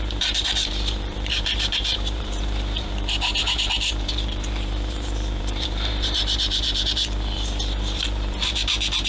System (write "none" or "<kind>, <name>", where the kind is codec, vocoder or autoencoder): vocoder, BigVGAN v2